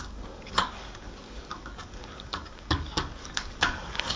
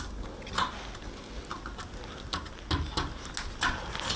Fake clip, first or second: first